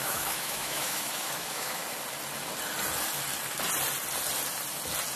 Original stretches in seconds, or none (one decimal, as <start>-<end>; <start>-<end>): 1.8-5.2